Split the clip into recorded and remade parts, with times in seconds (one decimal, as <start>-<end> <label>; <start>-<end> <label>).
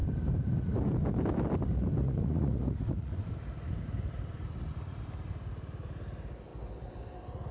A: 0.0-2.0 recorded; 2.0-3.2 remade; 3.2-7.5 recorded